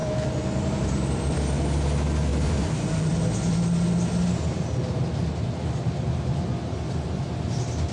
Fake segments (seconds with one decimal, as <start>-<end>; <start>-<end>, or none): 0.0-1.2; 2.3-3.1